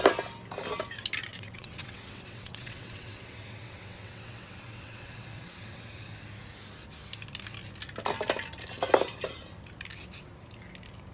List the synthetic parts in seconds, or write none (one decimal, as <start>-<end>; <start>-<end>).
1.3-6.0